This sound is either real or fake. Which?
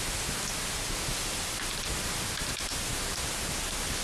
real